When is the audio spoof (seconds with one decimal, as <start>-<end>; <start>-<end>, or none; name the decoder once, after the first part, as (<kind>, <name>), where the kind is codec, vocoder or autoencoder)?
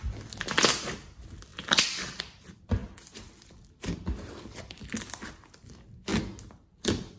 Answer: 1.5-2.2 (vocoder, BigVGAN v2); 2.8-4.9